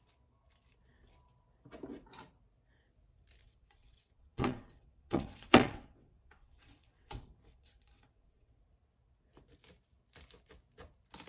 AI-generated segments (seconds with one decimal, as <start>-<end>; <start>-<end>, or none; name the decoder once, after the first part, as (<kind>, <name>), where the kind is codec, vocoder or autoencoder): 3.4-8.6 (vocoder, WaveNeXt)